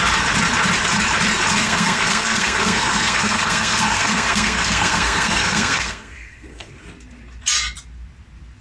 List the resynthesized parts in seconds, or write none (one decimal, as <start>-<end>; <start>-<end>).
1.6-6.7